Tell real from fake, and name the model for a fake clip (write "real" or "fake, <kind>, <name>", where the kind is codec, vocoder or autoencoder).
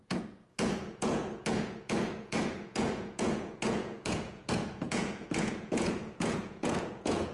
fake, vocoder, Vocos